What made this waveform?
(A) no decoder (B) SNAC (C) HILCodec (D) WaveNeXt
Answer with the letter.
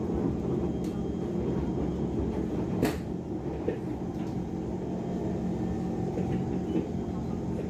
A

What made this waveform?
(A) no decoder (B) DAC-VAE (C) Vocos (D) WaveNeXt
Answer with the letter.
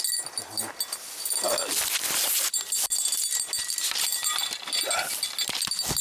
A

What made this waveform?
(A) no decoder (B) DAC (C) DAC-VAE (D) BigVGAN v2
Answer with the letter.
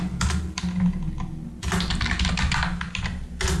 A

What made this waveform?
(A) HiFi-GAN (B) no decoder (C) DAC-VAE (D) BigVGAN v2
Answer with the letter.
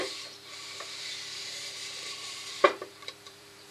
D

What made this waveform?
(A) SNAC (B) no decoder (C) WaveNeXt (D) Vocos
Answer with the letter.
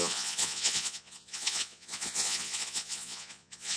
D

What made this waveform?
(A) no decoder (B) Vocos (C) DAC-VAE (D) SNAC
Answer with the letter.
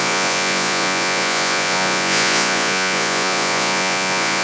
B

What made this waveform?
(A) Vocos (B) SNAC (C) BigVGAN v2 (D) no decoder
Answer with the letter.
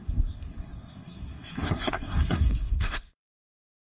B